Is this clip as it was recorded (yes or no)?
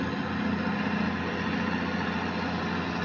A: yes